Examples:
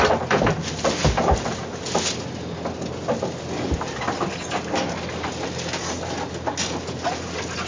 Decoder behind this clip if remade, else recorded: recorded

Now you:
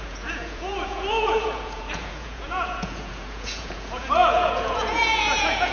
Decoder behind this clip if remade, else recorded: remade, vocoder, Vocos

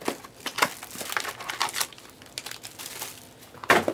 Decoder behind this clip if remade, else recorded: recorded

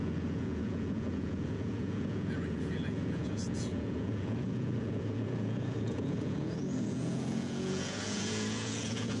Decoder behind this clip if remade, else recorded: remade, vocoder, Vocos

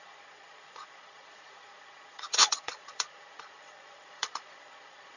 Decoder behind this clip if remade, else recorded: remade, vocoder, Vocos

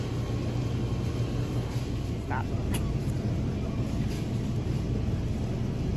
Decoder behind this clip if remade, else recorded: recorded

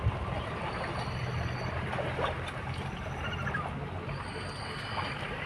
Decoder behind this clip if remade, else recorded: recorded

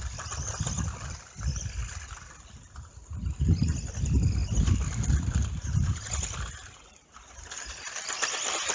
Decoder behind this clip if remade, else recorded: recorded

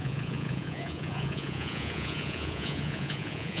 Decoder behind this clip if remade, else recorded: remade, vocoder, Vocos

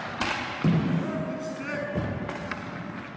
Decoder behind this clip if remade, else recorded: recorded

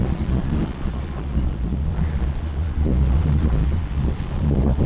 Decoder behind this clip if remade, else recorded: remade, vocoder, Vocos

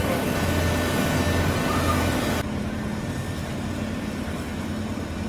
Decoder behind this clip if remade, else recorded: recorded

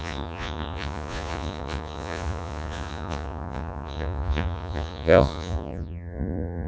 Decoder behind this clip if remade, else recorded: remade, vocoder, Vocos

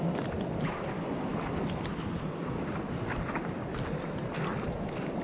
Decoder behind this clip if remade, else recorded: recorded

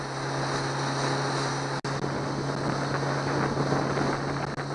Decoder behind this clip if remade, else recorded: recorded